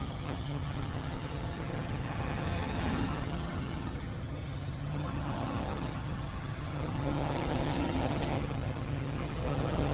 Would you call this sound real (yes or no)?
no